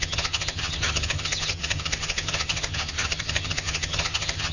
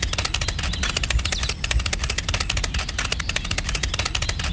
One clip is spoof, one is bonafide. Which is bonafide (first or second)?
second